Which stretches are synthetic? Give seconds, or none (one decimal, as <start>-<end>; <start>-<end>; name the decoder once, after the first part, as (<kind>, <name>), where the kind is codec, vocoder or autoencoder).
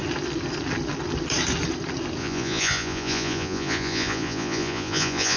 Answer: 2.2-5.4 (vocoder, Vocos)